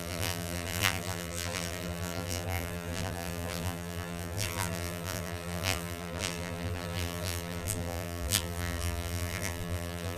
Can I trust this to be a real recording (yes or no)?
no